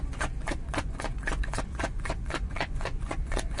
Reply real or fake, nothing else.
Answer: fake